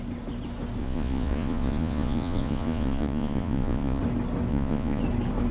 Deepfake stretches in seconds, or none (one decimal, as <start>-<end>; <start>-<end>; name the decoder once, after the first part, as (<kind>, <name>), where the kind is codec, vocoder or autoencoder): 0.8-4.0 (vocoder, Vocos); 4.5-5.0